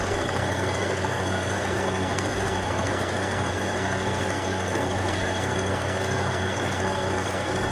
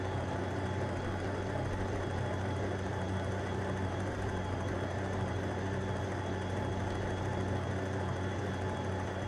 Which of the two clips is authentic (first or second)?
second